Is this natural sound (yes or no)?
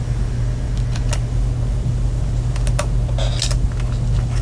yes